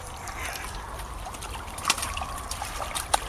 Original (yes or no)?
no